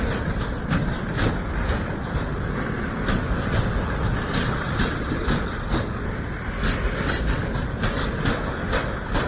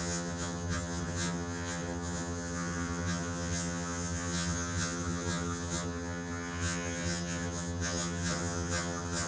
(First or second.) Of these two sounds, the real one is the first